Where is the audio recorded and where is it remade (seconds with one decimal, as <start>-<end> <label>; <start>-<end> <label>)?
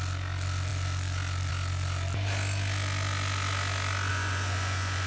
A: 0.0-4.1 recorded; 4.1-5.1 remade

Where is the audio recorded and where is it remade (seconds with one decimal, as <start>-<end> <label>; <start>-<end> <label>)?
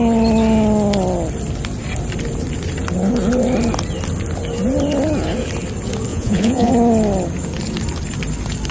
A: 0.0-6.1 recorded; 6.1-6.7 remade; 6.7-8.7 recorded